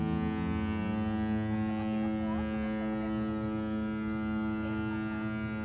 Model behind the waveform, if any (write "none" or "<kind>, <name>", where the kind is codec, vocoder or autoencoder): none